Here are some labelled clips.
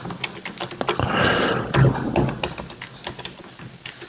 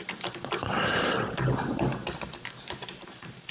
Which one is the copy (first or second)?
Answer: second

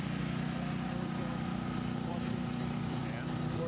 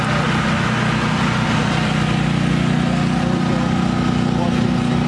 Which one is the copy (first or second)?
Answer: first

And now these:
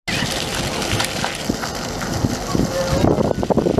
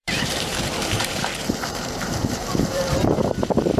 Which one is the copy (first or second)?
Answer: second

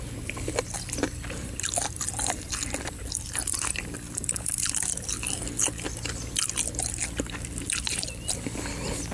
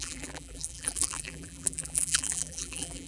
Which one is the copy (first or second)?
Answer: second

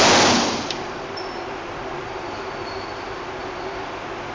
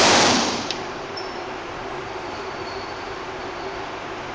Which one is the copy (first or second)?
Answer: second